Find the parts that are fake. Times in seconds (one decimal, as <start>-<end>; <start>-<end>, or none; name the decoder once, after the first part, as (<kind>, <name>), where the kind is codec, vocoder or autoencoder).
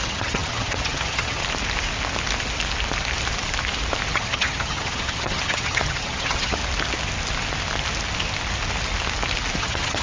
0.0-1.4 (vocoder, HiFi-GAN); 4.1-6.6; 9.6-10.0